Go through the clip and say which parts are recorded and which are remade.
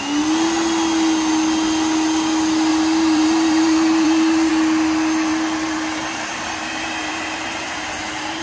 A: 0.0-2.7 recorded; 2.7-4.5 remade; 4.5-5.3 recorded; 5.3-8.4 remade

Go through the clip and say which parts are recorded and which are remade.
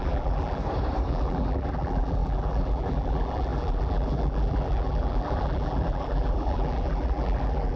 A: 0.0-0.6 remade; 0.6-1.1 recorded; 1.1-7.8 remade